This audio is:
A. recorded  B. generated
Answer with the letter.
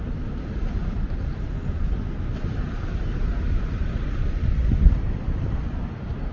B